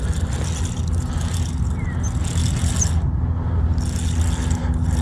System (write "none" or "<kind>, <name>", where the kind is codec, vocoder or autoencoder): none